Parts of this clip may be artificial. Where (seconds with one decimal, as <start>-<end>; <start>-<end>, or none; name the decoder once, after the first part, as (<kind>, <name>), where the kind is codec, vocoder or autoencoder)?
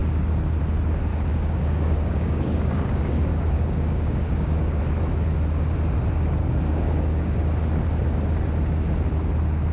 1.1-4.8 (codec, DAC); 6.4-7.5